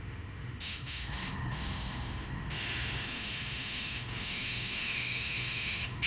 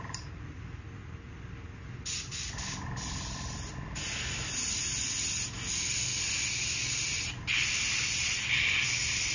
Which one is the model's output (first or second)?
first